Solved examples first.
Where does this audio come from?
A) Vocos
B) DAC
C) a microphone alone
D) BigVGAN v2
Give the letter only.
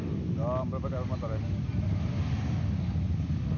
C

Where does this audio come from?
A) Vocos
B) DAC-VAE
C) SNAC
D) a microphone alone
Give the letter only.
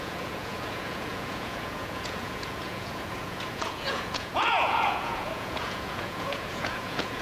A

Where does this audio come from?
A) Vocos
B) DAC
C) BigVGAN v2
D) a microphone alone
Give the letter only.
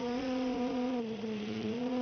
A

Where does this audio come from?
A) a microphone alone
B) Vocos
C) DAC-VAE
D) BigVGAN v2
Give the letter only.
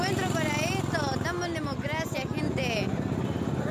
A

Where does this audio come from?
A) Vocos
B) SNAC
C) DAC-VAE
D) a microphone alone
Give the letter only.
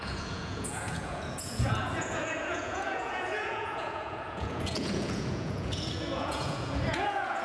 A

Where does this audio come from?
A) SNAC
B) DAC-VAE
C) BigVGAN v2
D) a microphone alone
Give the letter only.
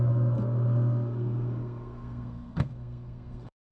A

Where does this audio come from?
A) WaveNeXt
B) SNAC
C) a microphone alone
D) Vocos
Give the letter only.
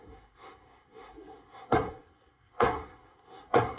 B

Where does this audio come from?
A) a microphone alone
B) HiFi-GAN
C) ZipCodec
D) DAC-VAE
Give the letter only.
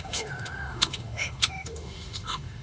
D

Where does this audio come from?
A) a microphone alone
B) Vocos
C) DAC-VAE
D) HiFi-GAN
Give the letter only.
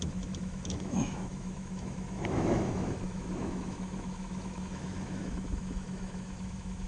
C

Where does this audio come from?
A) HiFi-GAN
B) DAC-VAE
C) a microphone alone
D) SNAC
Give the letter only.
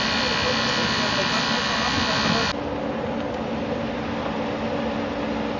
C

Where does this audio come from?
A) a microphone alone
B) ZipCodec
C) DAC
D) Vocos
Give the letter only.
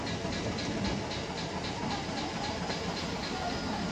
A